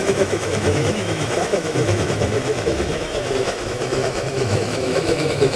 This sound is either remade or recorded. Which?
remade